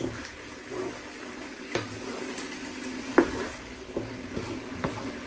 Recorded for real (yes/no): yes